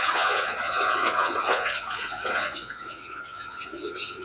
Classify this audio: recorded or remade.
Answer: remade